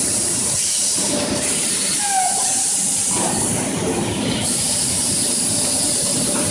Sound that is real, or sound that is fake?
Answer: fake